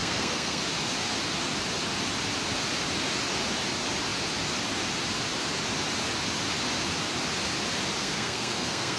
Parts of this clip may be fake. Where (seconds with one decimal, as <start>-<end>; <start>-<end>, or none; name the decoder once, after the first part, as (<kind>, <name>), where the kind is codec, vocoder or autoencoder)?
0.0-0.6 (codec, SNAC); 8.0-9.0